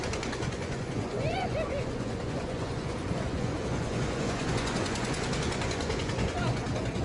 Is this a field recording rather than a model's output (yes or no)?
no